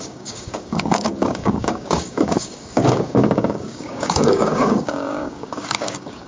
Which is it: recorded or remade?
remade